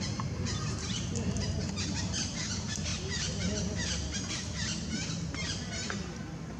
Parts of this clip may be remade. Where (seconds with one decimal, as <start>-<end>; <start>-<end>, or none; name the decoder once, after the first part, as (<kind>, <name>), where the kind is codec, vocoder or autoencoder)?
0.0-2.9 (vocoder, BigVGAN v2)